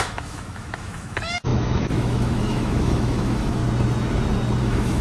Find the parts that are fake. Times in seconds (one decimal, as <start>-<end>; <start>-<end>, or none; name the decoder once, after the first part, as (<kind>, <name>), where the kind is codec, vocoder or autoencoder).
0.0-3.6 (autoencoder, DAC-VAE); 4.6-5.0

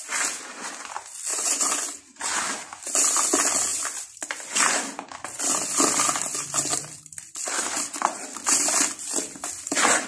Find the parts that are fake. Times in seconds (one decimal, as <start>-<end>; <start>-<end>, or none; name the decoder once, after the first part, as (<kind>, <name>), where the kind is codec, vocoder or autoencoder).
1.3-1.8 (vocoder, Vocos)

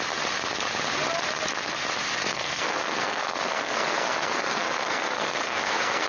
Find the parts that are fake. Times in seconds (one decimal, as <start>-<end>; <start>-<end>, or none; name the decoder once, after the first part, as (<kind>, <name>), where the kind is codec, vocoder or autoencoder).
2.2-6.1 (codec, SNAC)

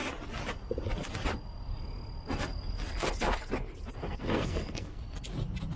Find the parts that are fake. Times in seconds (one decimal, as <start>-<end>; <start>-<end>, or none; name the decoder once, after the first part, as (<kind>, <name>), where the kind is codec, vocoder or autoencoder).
4.0-5.0 (codec, SNAC)